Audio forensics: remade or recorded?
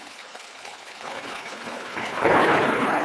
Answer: remade